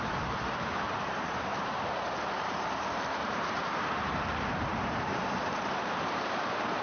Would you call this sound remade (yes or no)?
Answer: yes